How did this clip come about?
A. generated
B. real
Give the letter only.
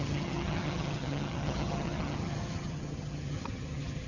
A